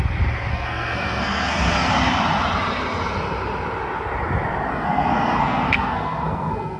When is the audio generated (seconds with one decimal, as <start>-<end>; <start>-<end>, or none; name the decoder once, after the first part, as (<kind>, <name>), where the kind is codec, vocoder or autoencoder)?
0.5-1.9 (codec, SNAC); 4.7-6.8